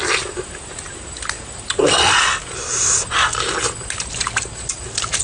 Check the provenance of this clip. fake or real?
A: real